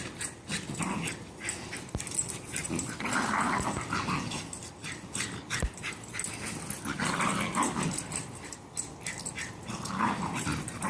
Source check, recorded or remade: recorded